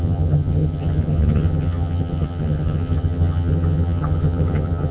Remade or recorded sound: remade